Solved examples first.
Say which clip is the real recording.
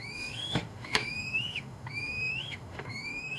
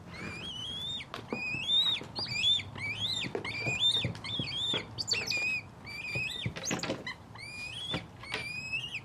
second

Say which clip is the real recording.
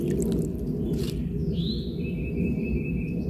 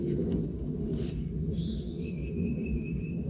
first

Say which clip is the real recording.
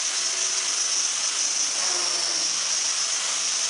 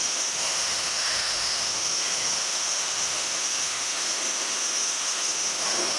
first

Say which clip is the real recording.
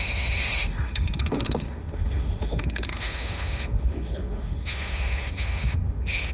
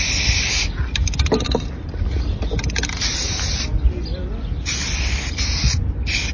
second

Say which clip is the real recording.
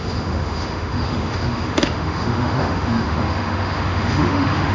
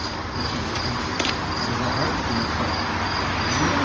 second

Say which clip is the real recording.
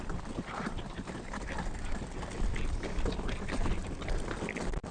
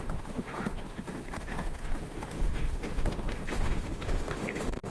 first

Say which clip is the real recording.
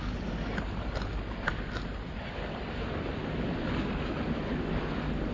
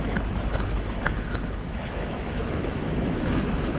first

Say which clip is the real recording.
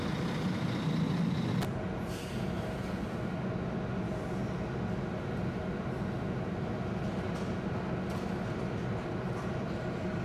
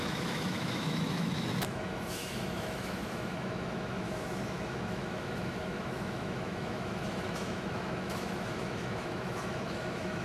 first